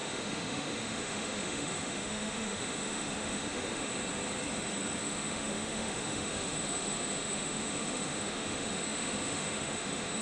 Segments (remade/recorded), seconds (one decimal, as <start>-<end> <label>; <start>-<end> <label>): 0.0-3.9 remade; 3.9-5.0 recorded; 5.0-10.2 remade